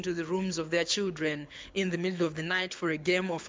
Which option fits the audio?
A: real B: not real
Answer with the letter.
B